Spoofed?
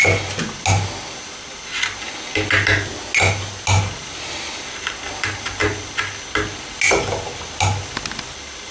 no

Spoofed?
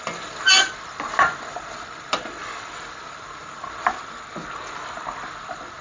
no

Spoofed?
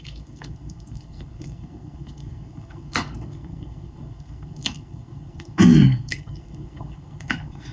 yes